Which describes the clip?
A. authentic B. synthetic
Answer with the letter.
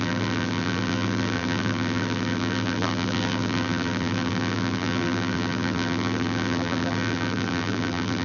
B